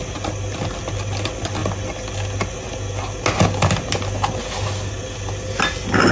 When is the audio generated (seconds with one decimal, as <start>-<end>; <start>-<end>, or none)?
none